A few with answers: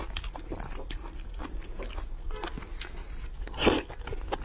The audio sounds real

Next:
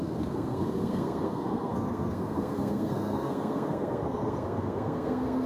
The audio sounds fake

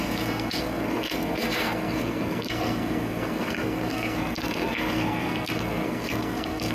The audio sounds fake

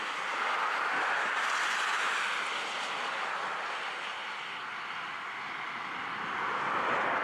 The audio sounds real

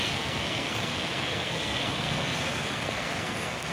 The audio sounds fake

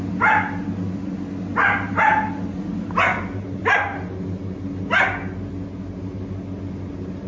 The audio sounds real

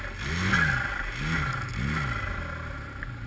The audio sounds real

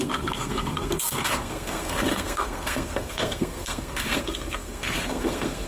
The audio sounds fake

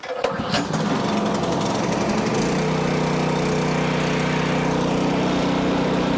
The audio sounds real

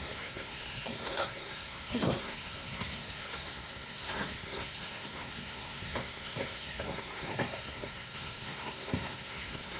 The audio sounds fake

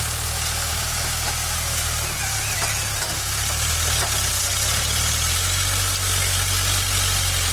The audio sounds real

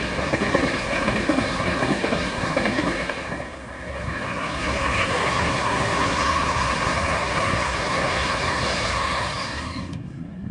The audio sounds fake